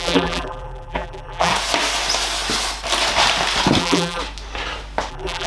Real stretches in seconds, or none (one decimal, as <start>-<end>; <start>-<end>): 1.5-3.8; 4.2-5.1